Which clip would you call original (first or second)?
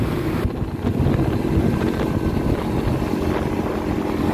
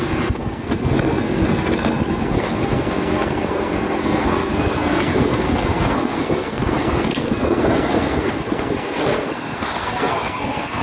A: first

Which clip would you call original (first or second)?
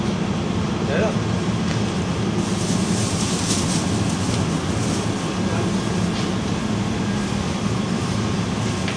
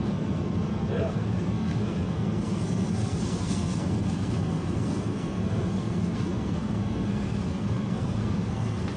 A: first